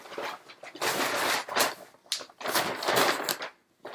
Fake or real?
real